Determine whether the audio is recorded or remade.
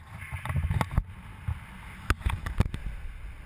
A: recorded